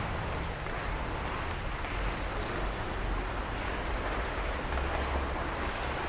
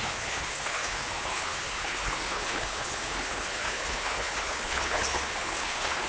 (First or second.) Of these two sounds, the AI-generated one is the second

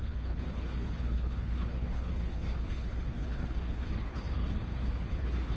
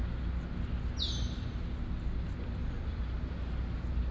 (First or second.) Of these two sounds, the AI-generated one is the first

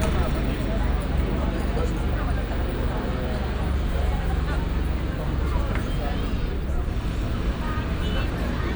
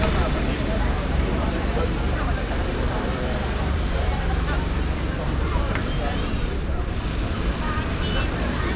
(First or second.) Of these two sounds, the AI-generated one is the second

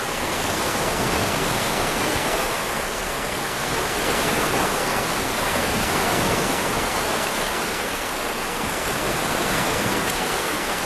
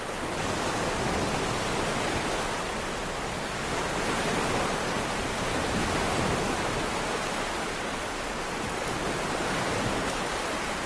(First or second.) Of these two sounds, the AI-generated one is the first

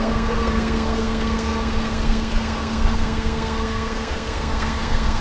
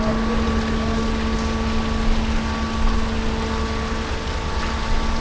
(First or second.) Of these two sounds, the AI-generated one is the first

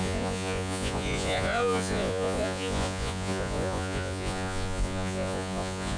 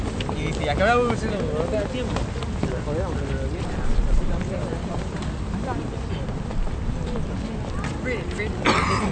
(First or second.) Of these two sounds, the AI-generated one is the first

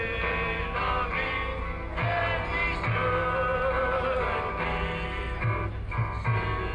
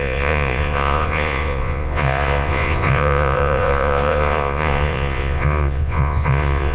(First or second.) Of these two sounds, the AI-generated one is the second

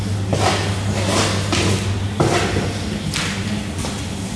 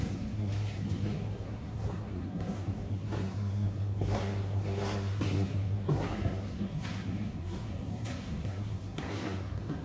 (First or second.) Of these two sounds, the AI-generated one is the second